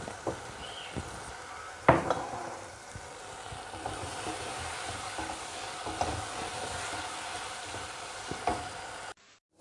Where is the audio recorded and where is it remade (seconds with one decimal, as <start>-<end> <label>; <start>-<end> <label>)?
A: 0.0-9.6 recorded